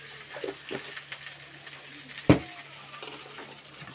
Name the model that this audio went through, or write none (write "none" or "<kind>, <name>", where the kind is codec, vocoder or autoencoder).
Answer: none